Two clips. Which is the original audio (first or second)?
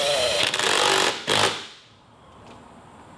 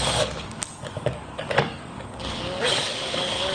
first